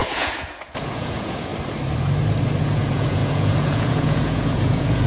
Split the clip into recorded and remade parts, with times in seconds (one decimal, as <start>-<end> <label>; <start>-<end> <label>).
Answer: 0.0-1.5 remade; 1.5-2.6 recorded; 2.6-5.1 remade